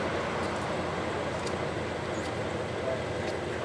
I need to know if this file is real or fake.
real